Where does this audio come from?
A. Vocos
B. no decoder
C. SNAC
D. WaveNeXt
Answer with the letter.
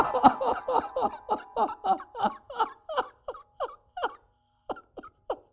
B